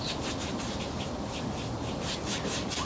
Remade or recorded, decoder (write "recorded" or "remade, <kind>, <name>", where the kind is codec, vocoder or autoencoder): recorded